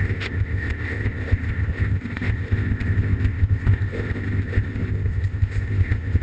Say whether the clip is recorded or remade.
remade